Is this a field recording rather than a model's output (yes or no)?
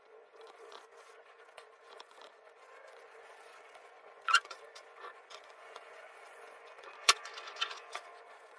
no